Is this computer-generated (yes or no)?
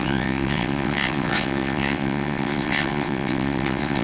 yes